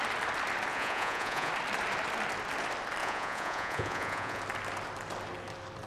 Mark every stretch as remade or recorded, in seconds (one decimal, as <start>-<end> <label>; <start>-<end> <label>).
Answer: 0.0-0.7 recorded; 0.7-1.5 remade; 1.5-3.0 recorded; 3.0-4.4 remade; 4.4-5.9 recorded